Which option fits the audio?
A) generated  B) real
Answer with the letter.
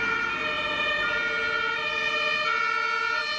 B